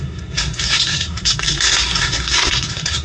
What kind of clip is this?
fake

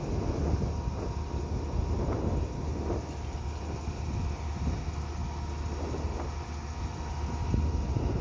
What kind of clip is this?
real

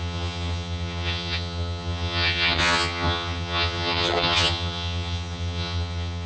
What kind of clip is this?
fake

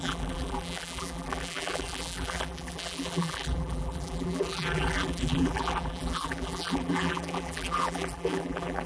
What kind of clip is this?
fake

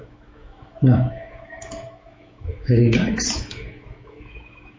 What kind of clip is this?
fake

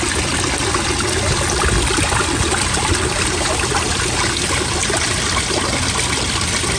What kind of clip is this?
real